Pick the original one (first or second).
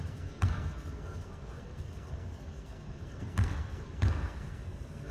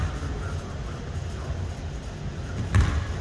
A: second